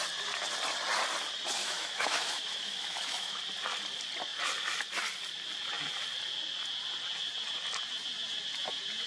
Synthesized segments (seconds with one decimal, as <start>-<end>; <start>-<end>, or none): 1.6-3.4